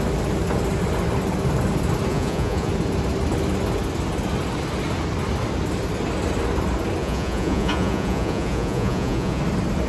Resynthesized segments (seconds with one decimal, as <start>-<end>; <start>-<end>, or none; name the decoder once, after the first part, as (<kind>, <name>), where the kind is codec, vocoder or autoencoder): 2.1-2.7 (vocoder, Vocos); 7.0-9.4